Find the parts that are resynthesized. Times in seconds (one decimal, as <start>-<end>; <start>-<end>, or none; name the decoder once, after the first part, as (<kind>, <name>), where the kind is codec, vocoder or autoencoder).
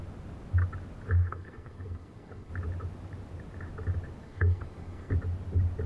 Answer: 1.2-2.5 (codec, SNAC); 4.2-5.1